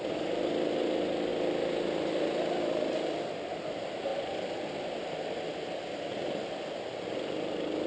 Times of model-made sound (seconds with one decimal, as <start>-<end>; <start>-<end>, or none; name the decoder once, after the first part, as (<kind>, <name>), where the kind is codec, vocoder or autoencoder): none